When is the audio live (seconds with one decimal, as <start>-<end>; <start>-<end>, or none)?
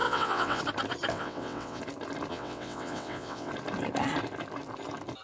0.6-1.1; 1.8-2.3; 3.5-5.2